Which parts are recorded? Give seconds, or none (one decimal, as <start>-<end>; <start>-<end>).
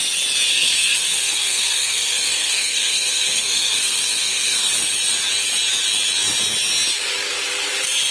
0.0-0.5; 4.7-8.1